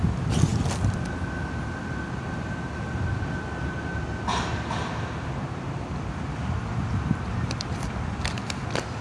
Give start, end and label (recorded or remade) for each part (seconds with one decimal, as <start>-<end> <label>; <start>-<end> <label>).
0.0-9.0 recorded